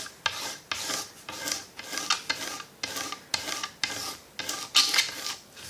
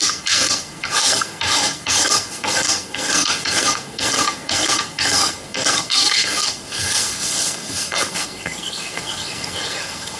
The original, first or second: first